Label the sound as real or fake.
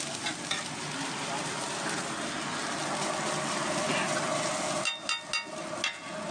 real